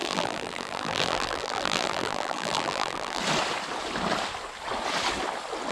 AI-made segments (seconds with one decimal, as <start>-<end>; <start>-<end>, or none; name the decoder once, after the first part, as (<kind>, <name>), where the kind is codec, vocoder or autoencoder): 0.0-3.2 (vocoder, BigVGAN v2)